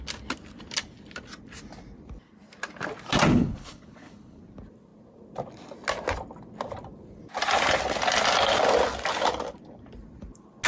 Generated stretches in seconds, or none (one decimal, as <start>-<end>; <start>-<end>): 3.3-4.4